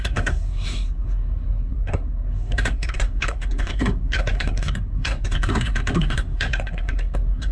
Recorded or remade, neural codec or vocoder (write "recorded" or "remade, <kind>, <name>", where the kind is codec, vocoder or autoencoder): remade, codec, SNAC